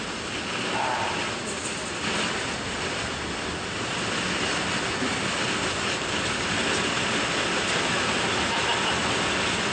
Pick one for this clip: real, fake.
real